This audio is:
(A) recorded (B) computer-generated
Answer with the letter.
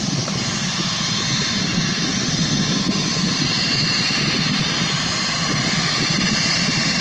A